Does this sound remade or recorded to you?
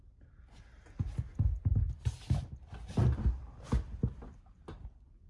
recorded